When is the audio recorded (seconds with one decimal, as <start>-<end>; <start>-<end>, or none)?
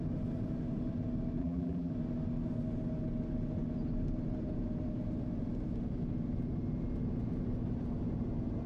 0.0-1.4; 1.9-8.7